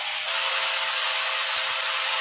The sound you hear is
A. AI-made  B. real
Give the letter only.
B